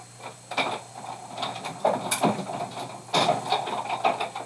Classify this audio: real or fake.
real